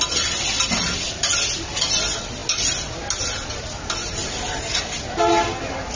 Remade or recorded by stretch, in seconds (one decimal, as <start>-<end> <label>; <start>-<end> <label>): 0.0-6.0 recorded